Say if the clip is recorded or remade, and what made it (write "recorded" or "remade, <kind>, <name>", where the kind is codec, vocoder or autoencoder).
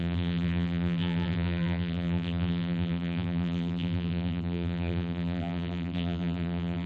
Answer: remade, vocoder, BigVGAN v2